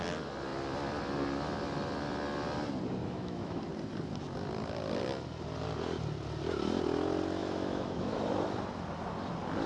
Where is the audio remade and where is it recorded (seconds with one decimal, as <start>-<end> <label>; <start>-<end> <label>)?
0.0-3.0 recorded; 3.0-3.6 remade; 3.6-7.4 recorded; 7.4-8.2 remade; 8.2-9.7 recorded